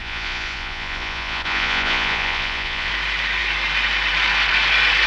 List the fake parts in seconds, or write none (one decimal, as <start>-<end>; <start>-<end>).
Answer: 0.0-2.9